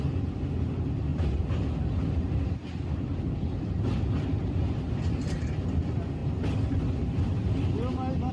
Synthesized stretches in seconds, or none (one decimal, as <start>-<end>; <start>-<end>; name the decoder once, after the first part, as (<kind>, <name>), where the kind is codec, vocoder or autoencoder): 0.0-1.1 (vocoder, BigVGAN v2); 2.5-6.2